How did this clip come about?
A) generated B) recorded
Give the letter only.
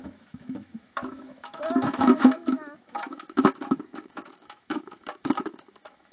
A